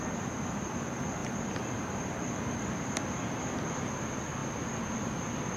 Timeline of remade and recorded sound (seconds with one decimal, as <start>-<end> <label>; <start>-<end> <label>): 0.0-5.6 recorded